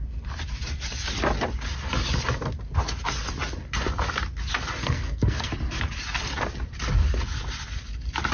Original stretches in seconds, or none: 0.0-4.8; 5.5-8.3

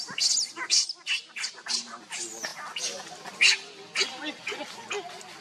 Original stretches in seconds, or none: 0.0-5.4

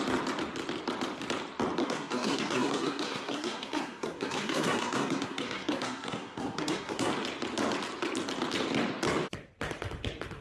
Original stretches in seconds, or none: 0.0-1.8; 7.1-10.4

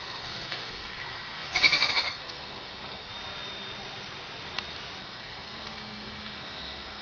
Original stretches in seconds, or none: 3.1-5.0

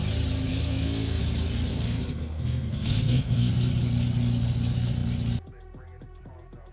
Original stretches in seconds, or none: 0.0-0.5; 1.2-1.7; 3.5-6.7

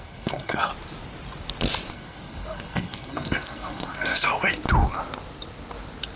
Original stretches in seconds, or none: 0.7-1.9; 4.3-6.2

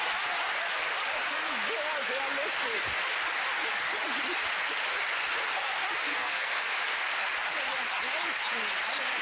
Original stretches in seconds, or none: 0.0-6.1; 6.7-9.2